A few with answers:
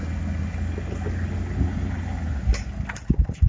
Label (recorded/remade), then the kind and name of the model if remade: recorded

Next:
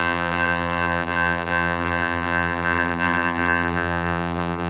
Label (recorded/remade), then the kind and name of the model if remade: remade, vocoder, BigVGAN v2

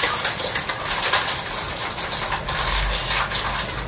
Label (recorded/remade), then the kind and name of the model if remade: recorded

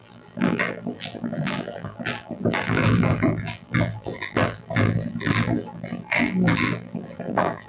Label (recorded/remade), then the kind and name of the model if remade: remade, vocoder, BigVGAN v2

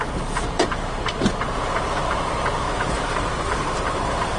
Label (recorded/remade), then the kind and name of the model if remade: remade, vocoder, BigVGAN v2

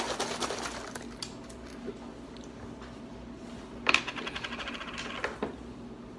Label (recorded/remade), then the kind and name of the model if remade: recorded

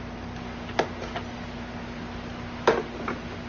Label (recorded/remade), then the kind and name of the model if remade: recorded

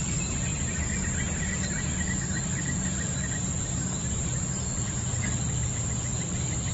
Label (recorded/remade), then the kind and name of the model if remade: recorded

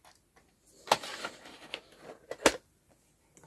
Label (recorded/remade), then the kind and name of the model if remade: recorded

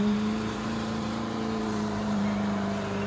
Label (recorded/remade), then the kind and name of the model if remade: remade, vocoder, BigVGAN v2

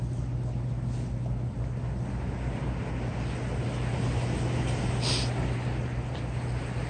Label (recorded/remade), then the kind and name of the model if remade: recorded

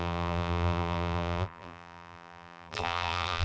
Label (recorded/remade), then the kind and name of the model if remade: remade, vocoder, BigVGAN v2